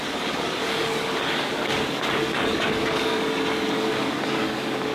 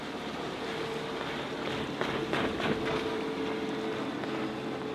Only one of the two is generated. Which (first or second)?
first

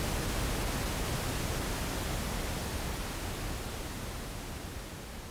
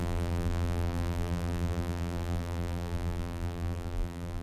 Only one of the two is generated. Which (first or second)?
second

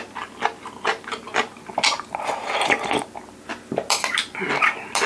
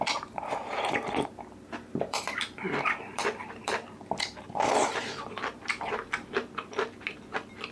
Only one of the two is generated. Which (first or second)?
second